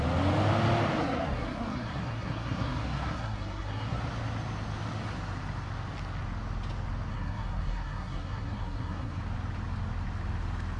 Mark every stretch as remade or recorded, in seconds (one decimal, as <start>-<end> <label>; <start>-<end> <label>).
0.0-1.0 recorded; 1.0-4.0 remade; 4.0-7.1 recorded; 7.1-9.2 remade; 9.2-10.8 recorded